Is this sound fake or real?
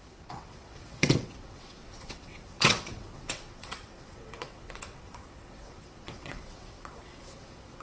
fake